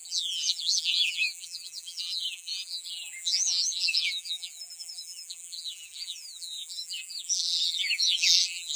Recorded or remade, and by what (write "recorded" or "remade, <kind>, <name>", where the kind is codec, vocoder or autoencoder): remade, vocoder, BigVGAN v2